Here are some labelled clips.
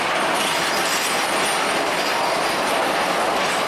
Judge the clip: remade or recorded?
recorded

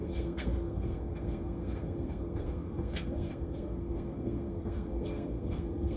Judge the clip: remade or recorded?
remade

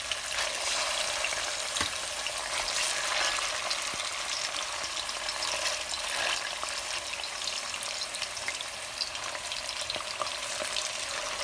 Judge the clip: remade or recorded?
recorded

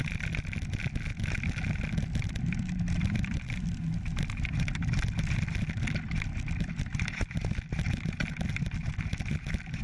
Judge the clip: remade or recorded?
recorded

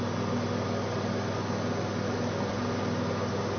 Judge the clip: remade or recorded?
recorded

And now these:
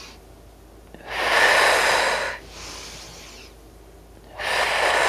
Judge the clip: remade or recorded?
recorded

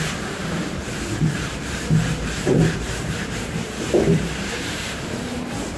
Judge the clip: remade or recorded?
remade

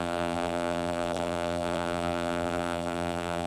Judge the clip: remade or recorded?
remade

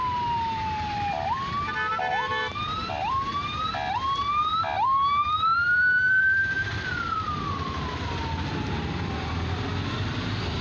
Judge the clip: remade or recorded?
recorded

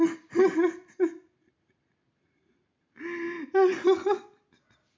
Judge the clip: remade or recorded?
recorded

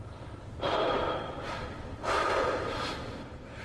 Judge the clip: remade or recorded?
recorded